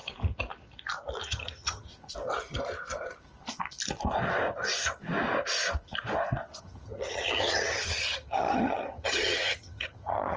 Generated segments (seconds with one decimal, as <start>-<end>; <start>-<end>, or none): 1.3-1.9; 6.6-10.4